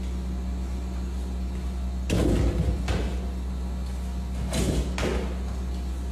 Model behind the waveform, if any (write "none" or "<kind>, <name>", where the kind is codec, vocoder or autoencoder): none